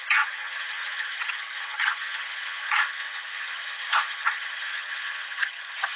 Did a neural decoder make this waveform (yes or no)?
yes